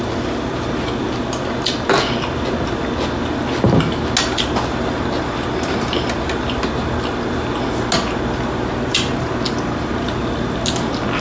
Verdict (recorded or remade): recorded